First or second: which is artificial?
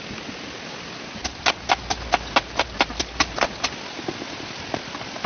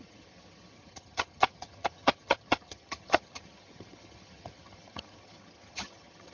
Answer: second